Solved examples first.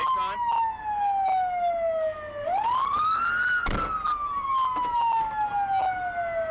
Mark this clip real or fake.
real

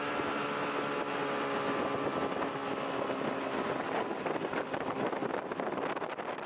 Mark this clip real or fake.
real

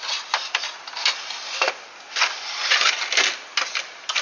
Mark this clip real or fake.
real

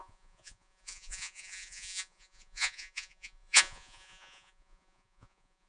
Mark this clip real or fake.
fake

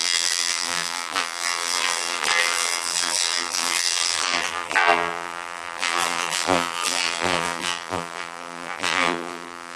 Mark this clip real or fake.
fake